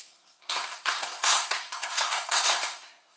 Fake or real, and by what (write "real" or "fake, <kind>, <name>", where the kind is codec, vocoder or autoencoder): fake, codec, SNAC